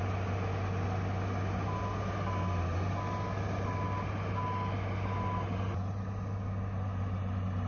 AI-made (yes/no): no